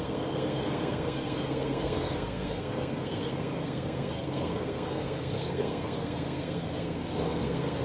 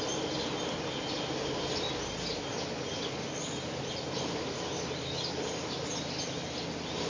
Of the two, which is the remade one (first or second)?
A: first